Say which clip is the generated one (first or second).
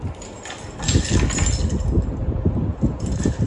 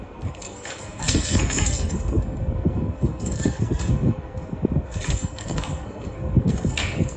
second